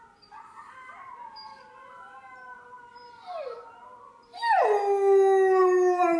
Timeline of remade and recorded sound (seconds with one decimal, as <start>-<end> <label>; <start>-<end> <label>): 0.0-6.2 recorded